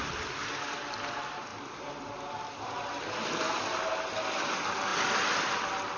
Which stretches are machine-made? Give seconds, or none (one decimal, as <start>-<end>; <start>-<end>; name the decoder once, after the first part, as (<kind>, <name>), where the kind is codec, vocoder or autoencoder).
none